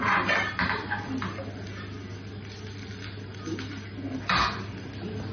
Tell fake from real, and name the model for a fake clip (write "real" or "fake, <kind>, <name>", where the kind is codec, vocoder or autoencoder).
real